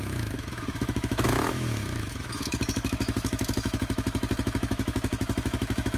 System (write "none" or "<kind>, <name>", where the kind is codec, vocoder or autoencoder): autoencoder, DAC-VAE